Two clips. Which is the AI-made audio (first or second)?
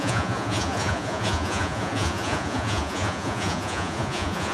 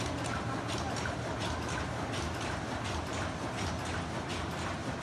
first